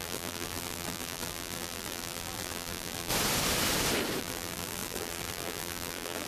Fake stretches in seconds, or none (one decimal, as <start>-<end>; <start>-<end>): 0.0-3.1; 4.2-6.3